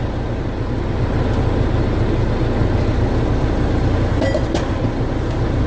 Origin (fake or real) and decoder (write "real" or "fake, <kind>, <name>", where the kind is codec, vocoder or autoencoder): real